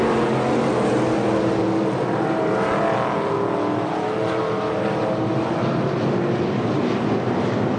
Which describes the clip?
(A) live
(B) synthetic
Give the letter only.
A